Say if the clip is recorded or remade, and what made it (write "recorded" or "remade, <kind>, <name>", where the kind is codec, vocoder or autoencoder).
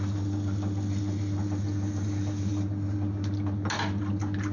recorded